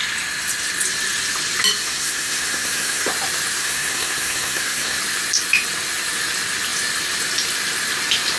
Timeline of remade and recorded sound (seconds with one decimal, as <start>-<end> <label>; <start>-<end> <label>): 0.0-1.8 recorded; 1.8-3.1 remade; 3.1-3.6 recorded; 3.6-5.0 remade; 5.0-8.4 recorded